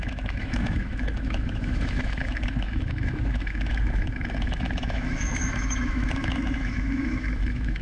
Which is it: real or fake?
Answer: fake